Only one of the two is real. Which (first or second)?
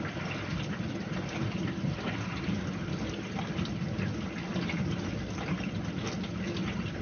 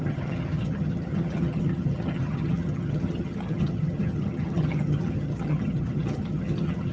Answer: first